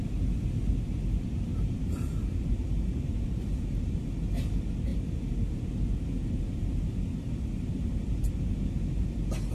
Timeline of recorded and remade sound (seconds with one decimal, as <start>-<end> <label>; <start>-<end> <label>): 0.0-1.5 recorded; 1.5-4.1 remade; 4.1-4.9 recorded; 4.9-8.3 remade; 8.3-9.5 recorded